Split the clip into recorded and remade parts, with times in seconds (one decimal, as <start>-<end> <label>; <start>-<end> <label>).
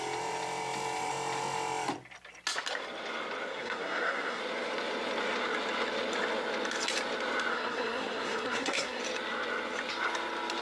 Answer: 0.0-3.5 recorded; 3.5-4.4 remade; 4.4-7.5 recorded; 7.5-9.0 remade; 9.0-10.6 recorded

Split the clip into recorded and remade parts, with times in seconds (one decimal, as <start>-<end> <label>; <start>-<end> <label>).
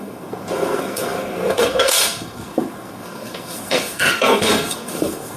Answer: 0.0-5.4 remade